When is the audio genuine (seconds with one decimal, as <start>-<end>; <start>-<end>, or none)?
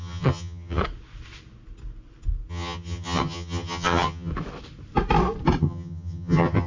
0.8-2.5; 4.3-5.6